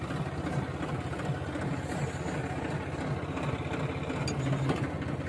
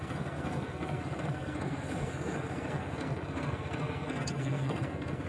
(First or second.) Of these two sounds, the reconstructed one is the second